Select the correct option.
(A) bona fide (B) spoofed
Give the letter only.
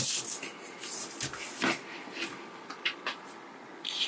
A